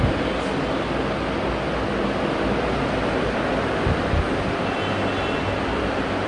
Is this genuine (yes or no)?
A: yes